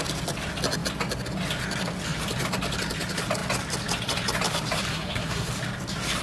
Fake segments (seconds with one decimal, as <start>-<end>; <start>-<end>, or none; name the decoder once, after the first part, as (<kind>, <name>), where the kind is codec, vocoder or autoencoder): 4.9-5.5 (codec, SNAC)